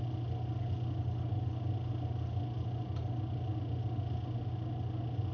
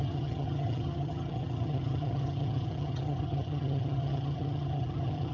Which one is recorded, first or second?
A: first